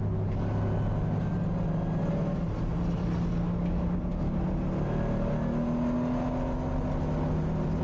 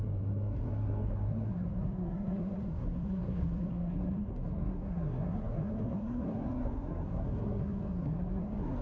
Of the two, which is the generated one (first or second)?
second